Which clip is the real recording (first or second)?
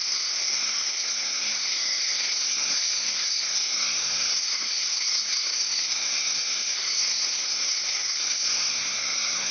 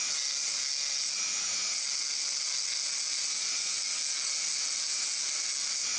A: second